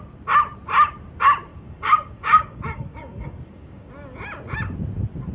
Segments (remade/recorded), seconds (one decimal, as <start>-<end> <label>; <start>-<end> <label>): 0.0-1.5 recorded; 1.5-3.9 remade; 3.9-5.3 recorded